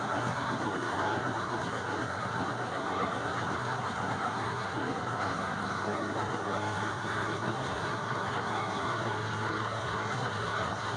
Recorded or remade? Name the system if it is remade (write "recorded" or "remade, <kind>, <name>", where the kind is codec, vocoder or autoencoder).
remade, codec, SNAC